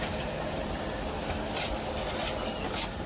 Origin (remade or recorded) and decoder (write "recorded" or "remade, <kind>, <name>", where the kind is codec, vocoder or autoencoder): recorded